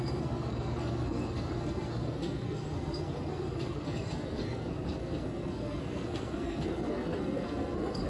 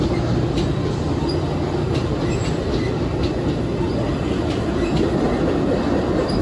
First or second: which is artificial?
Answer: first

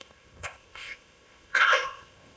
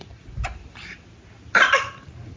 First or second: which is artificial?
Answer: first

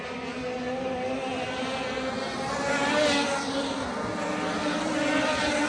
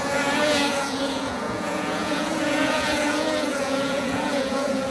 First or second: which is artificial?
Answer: second